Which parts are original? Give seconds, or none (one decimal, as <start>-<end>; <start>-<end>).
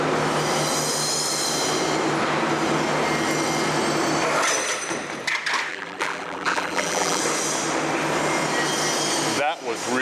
0.0-5.7; 7.2-10.0